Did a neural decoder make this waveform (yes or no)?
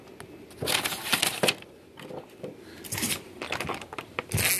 no